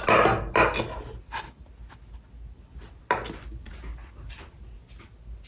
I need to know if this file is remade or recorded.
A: recorded